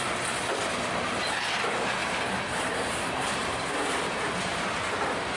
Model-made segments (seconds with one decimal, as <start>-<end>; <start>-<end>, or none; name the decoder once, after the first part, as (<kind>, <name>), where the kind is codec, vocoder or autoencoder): 2.0-5.4 (vocoder, BigVGAN v2)